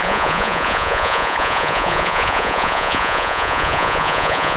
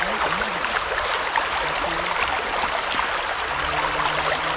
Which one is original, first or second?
second